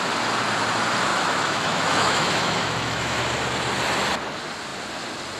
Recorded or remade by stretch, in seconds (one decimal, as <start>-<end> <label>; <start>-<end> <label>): 0.0-1.1 recorded; 1.1-3.2 remade; 3.2-5.4 recorded